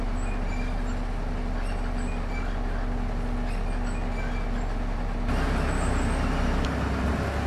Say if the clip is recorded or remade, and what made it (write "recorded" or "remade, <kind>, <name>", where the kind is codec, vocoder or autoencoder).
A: recorded